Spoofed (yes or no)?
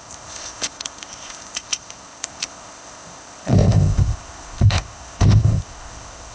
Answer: yes